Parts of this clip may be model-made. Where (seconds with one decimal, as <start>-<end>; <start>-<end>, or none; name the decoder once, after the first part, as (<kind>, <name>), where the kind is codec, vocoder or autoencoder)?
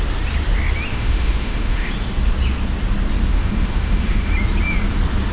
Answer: 0.9-1.9 (autoencoder, DAC-VAE); 3.3-4.3